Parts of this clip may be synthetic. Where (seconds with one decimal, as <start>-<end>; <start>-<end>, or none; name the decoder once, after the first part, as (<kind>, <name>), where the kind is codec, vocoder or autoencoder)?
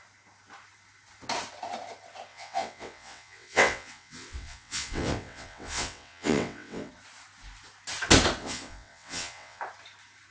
2.3-6.9 (vocoder, WaveNeXt); 8.4-9.6